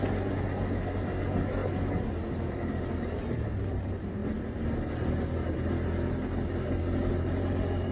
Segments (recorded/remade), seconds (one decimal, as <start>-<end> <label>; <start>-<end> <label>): 0.0-7.9 recorded